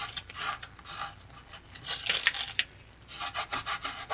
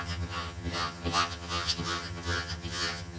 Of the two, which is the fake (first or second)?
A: second